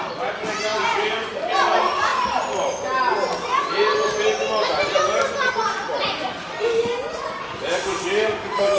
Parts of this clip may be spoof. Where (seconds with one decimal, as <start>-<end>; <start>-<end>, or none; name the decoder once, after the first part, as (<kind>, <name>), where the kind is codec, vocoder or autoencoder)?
none